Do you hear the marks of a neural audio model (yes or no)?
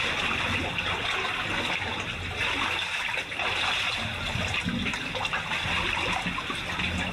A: no